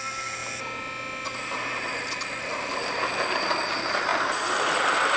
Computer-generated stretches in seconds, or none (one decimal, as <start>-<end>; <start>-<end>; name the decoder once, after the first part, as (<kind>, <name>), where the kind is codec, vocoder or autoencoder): none